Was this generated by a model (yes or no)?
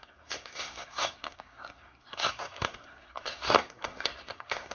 yes